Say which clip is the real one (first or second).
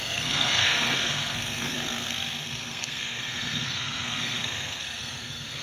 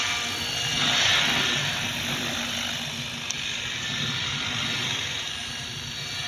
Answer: second